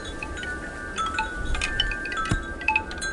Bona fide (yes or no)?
no